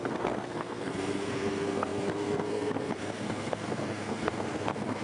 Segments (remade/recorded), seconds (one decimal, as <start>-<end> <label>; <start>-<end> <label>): 0.0-5.0 remade